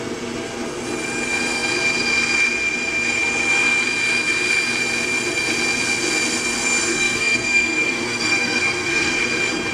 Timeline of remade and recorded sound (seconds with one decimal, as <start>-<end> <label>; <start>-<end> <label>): 0.0-6.9 recorded; 6.9-9.2 remade; 9.2-9.7 recorded